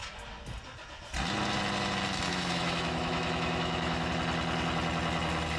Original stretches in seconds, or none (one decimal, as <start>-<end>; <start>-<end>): 0.0-2.3; 4.1-5.6